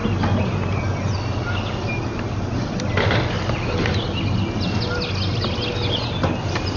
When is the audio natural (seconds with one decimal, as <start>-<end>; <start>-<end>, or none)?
0.0-6.8

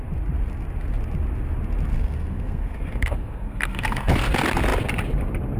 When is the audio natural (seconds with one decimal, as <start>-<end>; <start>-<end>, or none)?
0.0-1.9; 4.3-5.6

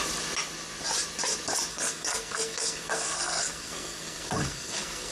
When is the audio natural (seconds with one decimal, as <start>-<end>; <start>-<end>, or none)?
0.0-1.7